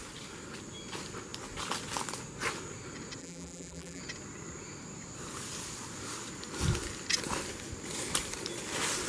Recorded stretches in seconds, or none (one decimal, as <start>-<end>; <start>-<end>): 0.0-3.2; 4.0-9.1